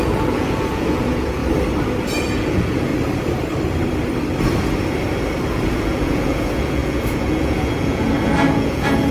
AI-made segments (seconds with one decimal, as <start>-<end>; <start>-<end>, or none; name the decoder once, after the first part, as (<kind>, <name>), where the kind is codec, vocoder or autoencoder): 0.0-1.4 (vocoder, Vocos); 2.0-2.9; 5.7-9.1